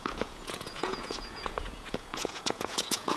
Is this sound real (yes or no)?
no